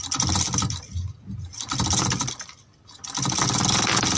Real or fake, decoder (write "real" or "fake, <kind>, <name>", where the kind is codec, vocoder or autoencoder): real